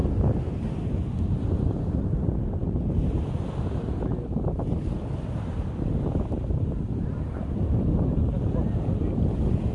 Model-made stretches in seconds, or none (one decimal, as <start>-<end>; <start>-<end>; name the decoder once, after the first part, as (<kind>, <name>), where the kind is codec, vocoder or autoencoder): 2.0-9.7 (vocoder, BigVGAN v2)